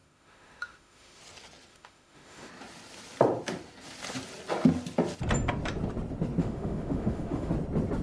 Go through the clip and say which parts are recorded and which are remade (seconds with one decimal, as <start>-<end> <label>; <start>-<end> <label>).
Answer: 0.0-1.2 remade; 1.2-1.7 recorded; 1.7-2.5 remade; 2.5-6.4 recorded; 6.4-7.5 remade; 7.5-8.0 recorded